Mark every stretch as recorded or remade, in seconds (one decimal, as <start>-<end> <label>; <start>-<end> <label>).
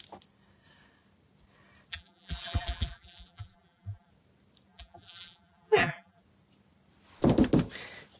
0.0-1.9 recorded; 1.9-4.1 remade; 4.1-4.7 recorded; 4.7-6.2 remade; 6.2-8.2 recorded